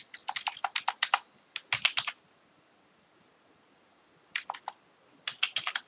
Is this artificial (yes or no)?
no